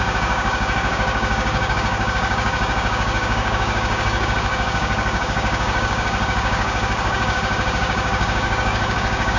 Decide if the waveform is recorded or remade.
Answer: remade